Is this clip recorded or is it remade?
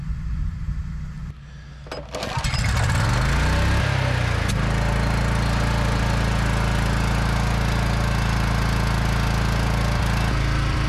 recorded